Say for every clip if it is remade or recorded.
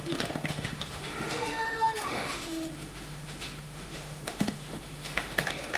remade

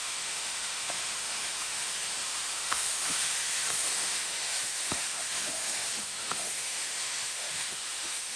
remade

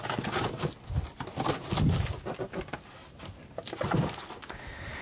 recorded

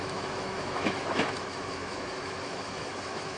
remade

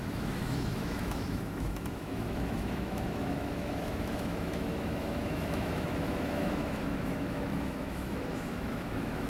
remade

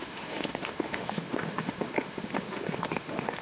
remade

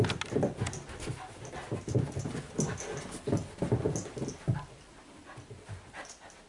recorded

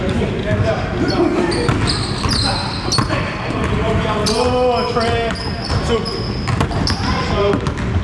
recorded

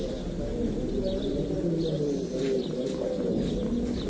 recorded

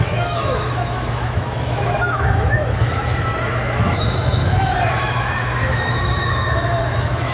remade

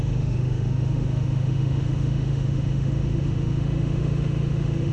remade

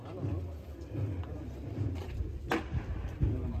recorded